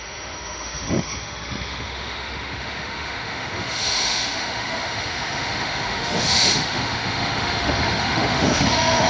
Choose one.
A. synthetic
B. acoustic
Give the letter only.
A